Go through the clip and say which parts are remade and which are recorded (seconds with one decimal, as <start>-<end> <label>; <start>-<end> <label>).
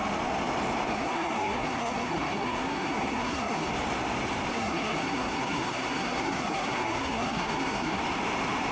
0.0-0.9 recorded; 0.9-3.7 remade; 3.7-4.5 recorded; 4.5-8.0 remade; 8.0-8.7 recorded